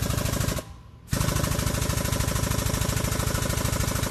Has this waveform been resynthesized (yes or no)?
no